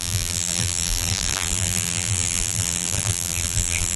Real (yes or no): no